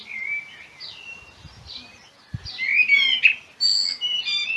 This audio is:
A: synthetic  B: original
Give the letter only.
B